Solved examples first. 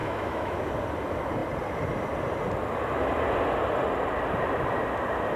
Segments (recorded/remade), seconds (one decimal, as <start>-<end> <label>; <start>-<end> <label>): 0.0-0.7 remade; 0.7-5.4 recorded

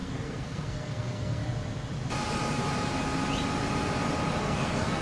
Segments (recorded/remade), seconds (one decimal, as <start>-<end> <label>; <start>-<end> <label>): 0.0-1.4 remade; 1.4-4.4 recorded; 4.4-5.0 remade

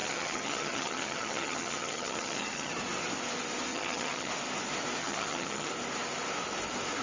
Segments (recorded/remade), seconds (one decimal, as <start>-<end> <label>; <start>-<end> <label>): 0.0-2.7 remade; 2.7-3.7 recorded; 3.7-4.3 remade; 4.3-5.0 recorded; 5.0-5.7 remade; 5.7-7.0 recorded

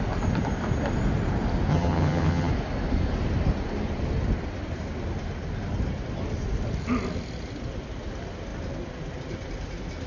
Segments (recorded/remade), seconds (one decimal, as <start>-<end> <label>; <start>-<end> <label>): 0.0-1.7 recorded; 1.7-2.5 remade; 2.5-10.1 recorded

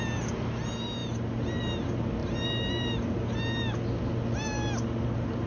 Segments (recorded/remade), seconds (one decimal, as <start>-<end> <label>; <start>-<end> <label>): 0.0-2.2 recorded; 2.2-2.9 remade; 2.9-5.5 recorded